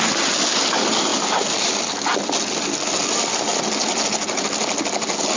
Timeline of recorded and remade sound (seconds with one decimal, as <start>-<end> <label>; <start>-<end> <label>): 0.0-5.4 recorded